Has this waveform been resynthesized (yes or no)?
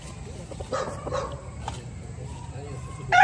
no